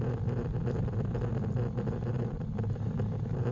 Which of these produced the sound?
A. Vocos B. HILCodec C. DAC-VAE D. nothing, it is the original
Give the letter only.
D